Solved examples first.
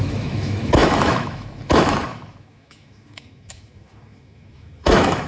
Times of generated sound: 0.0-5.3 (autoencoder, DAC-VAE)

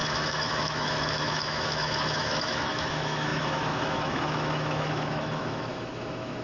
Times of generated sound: 0.0-6.4 (autoencoder, DAC-VAE)

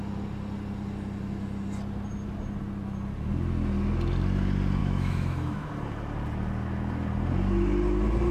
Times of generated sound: 4.8-5.7 (autoencoder, DAC-VAE)